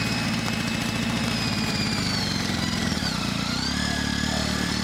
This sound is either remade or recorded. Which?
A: remade